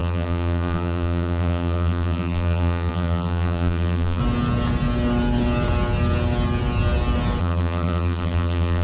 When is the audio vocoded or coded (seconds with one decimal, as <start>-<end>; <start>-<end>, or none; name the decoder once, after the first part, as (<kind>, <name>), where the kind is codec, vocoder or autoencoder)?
0.0-4.2 (vocoder, BigVGAN v2); 7.4-8.8